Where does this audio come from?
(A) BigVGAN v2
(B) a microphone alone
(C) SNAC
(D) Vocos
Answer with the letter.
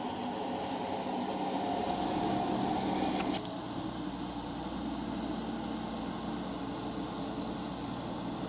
A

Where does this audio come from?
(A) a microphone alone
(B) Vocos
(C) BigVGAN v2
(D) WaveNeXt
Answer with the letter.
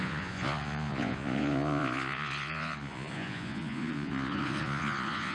B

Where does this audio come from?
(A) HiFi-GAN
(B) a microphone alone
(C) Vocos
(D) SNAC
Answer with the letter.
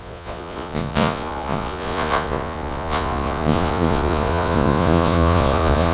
C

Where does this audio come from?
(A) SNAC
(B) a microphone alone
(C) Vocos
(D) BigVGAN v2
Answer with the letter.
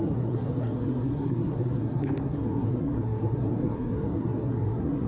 A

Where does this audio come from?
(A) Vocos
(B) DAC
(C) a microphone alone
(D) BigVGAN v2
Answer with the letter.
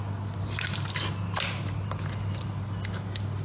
C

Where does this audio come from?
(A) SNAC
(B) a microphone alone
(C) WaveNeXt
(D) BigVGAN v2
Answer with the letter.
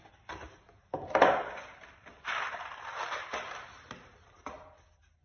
B